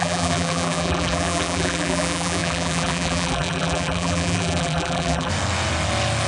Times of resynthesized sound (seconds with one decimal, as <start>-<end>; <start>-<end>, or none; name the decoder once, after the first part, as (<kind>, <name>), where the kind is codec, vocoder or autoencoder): 0.0-5.3 (vocoder, BigVGAN v2)